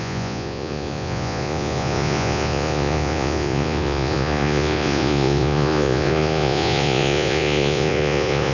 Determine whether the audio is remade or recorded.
remade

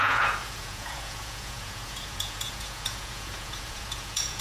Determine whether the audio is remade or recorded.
remade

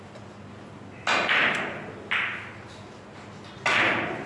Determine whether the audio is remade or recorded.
recorded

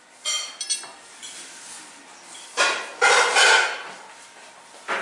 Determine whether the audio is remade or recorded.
recorded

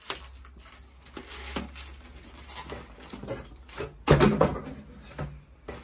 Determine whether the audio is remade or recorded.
recorded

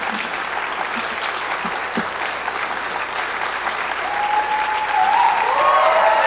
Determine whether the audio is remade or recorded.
recorded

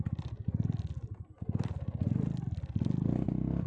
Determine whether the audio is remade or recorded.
recorded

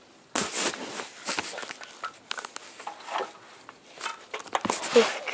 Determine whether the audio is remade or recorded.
recorded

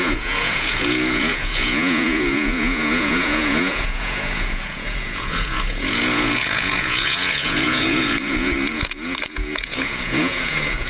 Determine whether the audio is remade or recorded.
remade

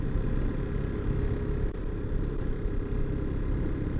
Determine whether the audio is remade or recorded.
recorded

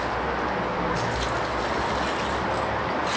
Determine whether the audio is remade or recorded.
recorded